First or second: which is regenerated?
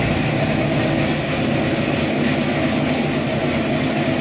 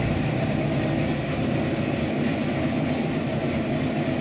second